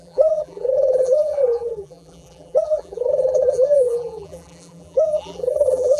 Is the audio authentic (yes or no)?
no